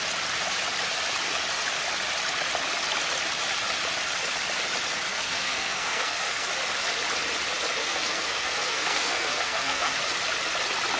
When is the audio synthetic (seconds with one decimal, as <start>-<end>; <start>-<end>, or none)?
5.1-6.5; 7.8-10.0